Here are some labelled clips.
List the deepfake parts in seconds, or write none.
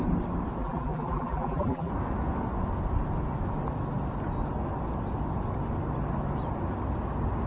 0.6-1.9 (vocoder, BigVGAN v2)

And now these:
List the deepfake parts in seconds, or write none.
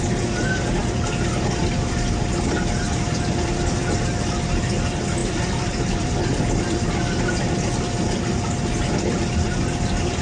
5.2-6.4 (vocoder, BigVGAN v2)